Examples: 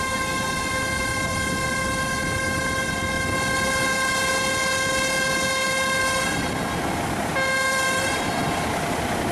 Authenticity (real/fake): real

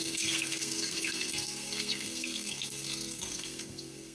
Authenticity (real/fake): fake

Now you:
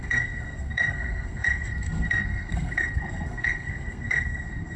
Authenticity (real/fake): fake